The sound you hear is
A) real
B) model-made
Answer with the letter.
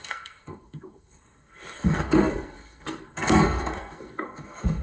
B